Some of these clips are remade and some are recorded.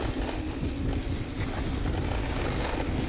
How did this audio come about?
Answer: recorded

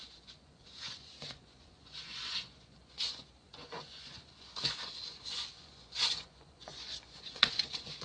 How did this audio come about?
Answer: remade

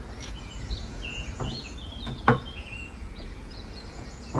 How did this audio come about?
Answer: remade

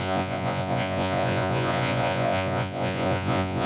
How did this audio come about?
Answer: remade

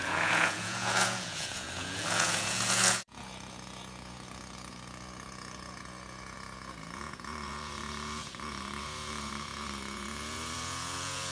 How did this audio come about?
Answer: remade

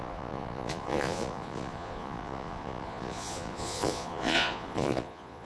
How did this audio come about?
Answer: remade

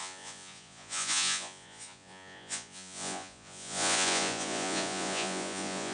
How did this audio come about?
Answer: remade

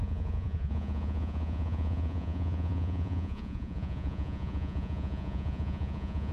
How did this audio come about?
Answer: remade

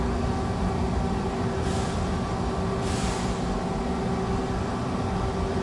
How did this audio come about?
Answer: recorded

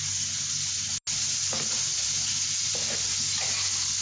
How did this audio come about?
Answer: recorded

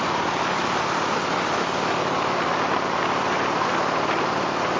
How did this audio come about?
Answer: recorded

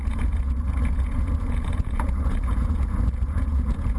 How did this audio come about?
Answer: remade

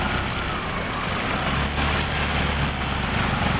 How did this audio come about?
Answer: recorded